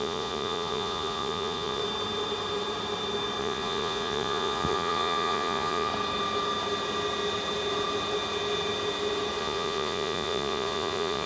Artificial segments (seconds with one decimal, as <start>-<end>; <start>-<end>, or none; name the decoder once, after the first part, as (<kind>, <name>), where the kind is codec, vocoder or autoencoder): 0.0-1.8 (vocoder, Vocos); 3.4-5.9; 9.4-11.3